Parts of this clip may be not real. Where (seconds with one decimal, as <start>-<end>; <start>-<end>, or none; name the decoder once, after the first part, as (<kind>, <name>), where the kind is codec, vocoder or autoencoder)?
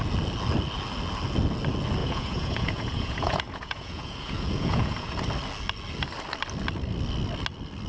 2.0-5.2 (vocoder, Vocos)